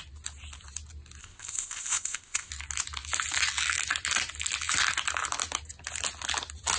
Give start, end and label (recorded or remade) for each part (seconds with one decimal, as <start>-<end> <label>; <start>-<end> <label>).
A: 0.0-1.2 recorded; 1.2-2.5 remade; 2.5-6.8 recorded